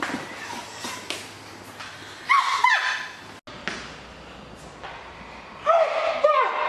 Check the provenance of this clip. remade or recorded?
recorded